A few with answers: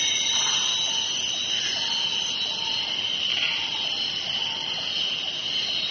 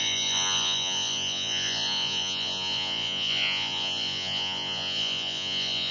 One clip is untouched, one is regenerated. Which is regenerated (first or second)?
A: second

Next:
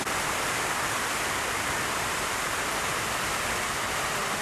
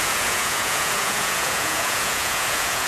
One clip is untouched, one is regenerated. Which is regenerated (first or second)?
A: second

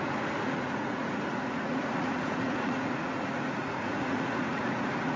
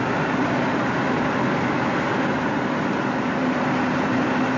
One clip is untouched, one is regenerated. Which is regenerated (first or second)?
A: first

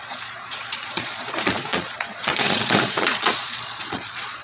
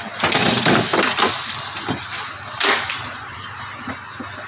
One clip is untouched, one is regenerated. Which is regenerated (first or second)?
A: first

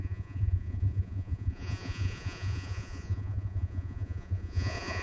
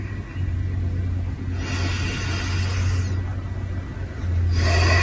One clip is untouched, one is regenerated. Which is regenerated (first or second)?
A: first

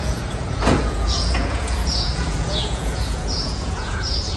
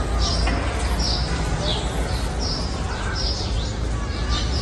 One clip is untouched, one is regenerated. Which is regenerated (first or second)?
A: first